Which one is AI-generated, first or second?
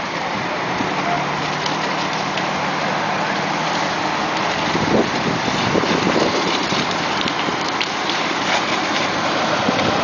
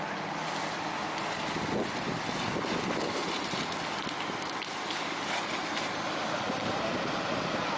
first